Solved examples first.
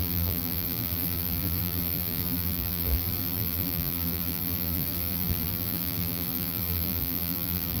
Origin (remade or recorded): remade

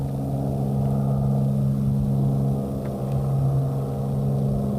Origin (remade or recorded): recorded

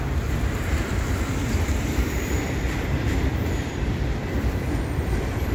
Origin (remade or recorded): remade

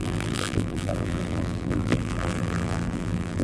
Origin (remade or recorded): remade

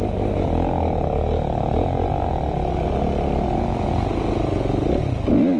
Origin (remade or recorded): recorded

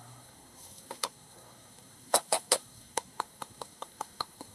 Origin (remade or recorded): remade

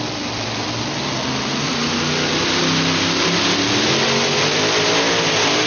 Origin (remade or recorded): recorded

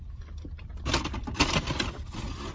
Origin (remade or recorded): recorded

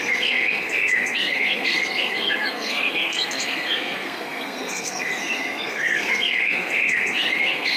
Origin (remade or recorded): remade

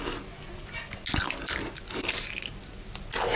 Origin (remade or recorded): recorded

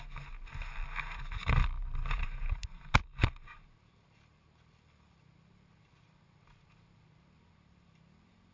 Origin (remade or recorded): recorded